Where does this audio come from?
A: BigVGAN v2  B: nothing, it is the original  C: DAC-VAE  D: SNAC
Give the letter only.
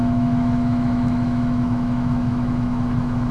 C